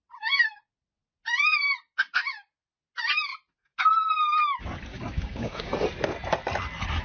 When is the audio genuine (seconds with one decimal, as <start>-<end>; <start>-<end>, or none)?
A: 0.0-4.9; 5.7-7.0

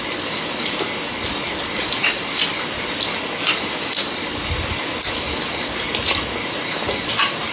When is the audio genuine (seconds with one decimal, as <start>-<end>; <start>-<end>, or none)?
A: 0.0-7.5

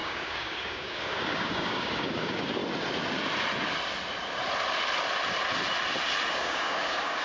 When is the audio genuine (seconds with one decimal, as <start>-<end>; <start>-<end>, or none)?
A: 2.6-6.3

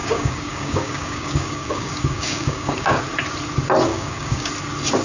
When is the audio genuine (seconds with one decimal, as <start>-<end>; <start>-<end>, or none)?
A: 3.0-3.9; 4.5-5.0

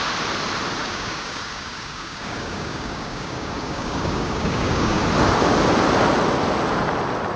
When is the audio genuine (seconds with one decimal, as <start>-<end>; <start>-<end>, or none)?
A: 0.0-0.8; 5.0-7.4

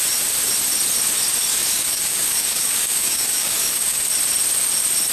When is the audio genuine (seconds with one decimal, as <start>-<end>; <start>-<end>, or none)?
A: 0.0-1.5; 4.1-5.1